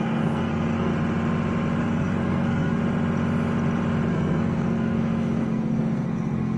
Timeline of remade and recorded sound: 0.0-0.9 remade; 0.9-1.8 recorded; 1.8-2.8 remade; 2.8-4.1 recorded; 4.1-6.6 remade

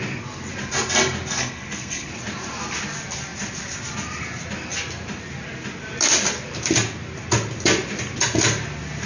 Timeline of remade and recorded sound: 0.0-1.4 recorded; 1.4-2.1 remade; 2.1-9.1 recorded

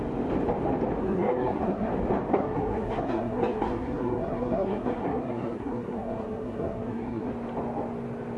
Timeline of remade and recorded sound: 0.0-1.0 recorded; 1.0-1.9 remade; 1.9-2.3 recorded; 2.3-7.3 remade; 7.3-8.4 recorded

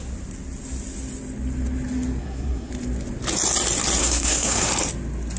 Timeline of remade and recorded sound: 0.0-2.2 recorded; 2.2-2.7 remade; 2.7-4.0 recorded; 4.0-4.7 remade; 4.7-5.4 recorded

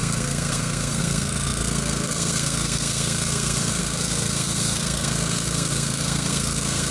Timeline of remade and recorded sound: 0.0-6.9 remade

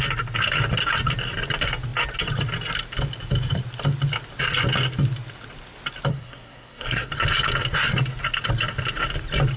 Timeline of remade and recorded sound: 0.0-6.1 recorded; 6.1-7.1 remade; 7.1-9.6 recorded

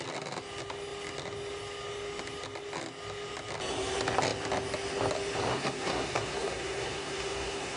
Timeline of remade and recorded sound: 0.0-5.5 recorded; 5.5-7.8 remade

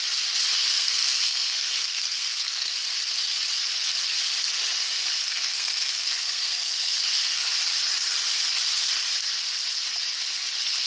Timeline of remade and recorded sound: 0.0-0.6 recorded; 0.6-2.7 remade; 2.7-5.0 recorded; 5.0-7.5 remade; 7.5-10.9 recorded